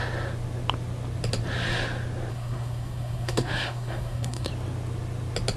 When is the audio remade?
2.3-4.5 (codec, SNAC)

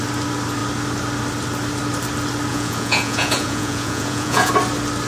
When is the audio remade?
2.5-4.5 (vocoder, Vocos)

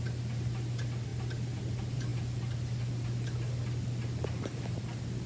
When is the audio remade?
none

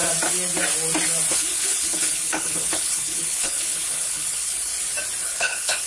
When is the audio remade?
1.3-4.7 (codec, HILCodec); 5.2-5.9

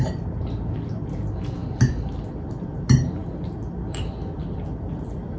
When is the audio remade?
none

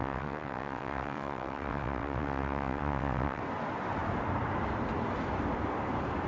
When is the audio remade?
0.0-3.4 (vocoder, WaveNeXt)

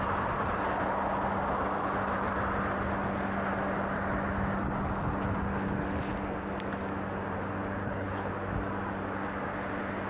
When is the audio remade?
7.8-8.3 (codec, HILCodec)